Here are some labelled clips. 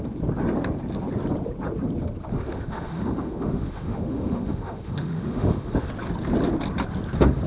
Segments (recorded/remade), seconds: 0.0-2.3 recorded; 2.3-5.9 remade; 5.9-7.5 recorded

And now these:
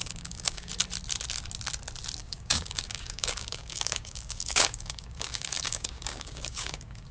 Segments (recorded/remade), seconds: 0.0-0.7 remade; 0.7-2.2 recorded; 2.2-7.1 remade

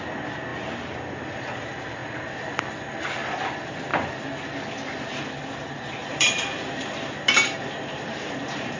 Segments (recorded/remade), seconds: 0.0-6.0 recorded; 6.0-8.8 remade